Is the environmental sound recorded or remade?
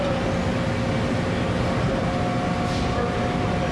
recorded